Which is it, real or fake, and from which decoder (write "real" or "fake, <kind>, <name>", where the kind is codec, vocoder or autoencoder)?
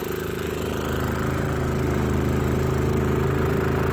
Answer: real